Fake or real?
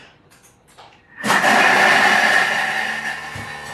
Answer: real